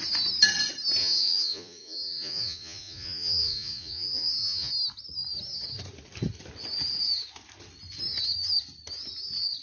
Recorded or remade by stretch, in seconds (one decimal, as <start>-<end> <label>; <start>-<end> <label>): 0.0-1.0 recorded; 1.0-4.7 remade; 4.7-9.6 recorded